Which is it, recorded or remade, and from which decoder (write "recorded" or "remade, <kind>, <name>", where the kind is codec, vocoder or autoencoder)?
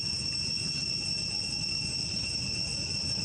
recorded